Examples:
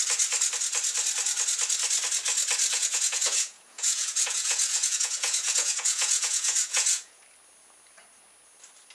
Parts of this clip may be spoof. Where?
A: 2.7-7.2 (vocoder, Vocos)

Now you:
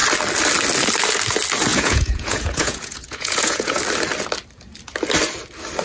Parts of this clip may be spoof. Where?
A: 1.7-3.8 (vocoder, Vocos)

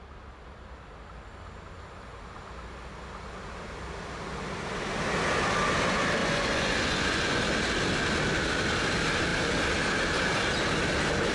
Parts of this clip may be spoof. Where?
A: 6.2-7.4 (vocoder, Vocos)

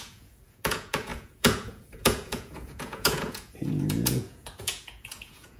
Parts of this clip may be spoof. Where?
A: 0.0-5.6 (vocoder, Vocos)

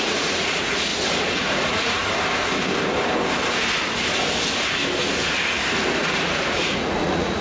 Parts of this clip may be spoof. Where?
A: 0.0-0.9 (vocoder, Vocos); 1.4-2.0; 6.0-7.4